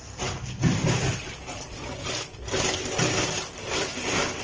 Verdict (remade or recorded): recorded